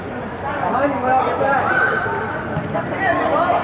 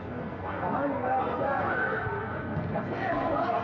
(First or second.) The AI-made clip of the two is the second